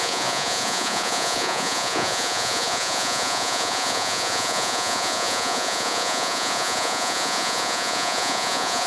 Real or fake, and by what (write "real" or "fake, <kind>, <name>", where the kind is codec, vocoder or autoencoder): fake, vocoder, Vocos